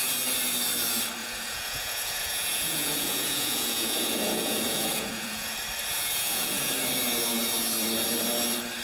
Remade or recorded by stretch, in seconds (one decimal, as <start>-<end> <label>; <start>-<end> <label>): 0.0-1.2 recorded; 1.2-5.5 remade; 5.5-5.9 recorded; 5.9-6.7 remade; 6.7-8.8 recorded